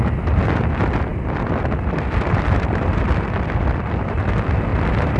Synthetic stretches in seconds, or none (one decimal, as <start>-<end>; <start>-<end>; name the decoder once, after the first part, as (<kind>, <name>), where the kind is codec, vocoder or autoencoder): 1.1-4.2 (vocoder, BigVGAN v2); 4.7-5.2